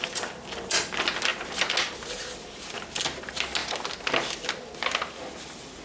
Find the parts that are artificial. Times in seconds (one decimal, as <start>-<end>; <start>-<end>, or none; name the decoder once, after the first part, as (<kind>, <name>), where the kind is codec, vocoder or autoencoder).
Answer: none